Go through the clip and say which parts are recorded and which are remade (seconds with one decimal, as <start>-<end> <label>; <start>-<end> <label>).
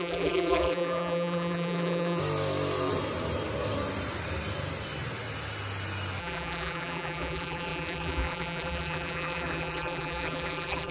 0.0-2.2 remade; 2.2-6.2 recorded; 6.2-10.9 remade